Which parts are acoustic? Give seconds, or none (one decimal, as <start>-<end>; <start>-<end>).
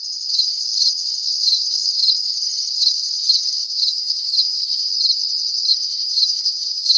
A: 4.9-5.7